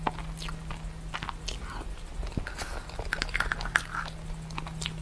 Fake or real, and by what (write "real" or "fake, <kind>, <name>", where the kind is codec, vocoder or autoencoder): real